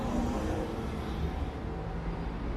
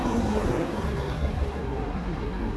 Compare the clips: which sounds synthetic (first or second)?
second